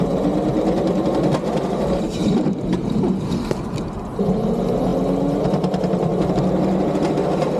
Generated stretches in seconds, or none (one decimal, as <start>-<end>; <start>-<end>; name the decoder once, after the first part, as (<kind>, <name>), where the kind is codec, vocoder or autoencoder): 2.2-3.0 (vocoder, BigVGAN v2)

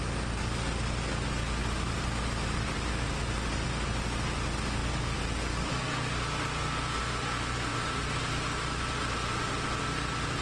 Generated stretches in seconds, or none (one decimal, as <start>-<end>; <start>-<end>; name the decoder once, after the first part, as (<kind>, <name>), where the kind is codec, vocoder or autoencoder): 1.6-2.9 (vocoder, BigVGAN v2); 7.7-9.0

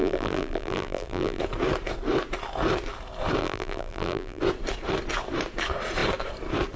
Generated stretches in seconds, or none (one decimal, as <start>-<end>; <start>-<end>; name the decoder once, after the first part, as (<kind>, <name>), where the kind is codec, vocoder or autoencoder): 0.0-1.4 (vocoder, BigVGAN v2); 3.4-4.4

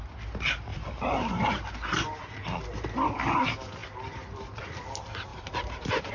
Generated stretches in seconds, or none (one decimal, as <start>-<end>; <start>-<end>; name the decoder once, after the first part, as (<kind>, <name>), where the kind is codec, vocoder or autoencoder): 0.7-1.6 (vocoder, BigVGAN v2); 5.3-6.1